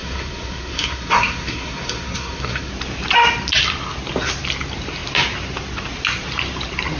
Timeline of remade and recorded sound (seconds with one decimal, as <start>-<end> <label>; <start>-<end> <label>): 0.0-2.7 remade; 2.7-7.0 recorded